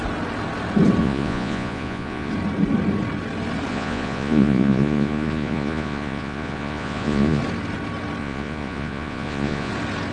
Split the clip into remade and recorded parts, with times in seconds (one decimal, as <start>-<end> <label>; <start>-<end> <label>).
0.0-1.0 recorded; 1.0-2.3 remade; 2.3-3.7 recorded; 3.7-7.4 remade; 7.4-8.2 recorded; 8.2-9.7 remade; 9.7-10.1 recorded